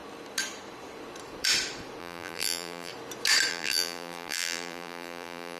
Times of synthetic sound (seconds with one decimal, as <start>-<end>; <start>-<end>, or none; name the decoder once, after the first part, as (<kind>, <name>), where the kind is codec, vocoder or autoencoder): 2.0-2.9 (vocoder, BigVGAN v2); 3.5-5.6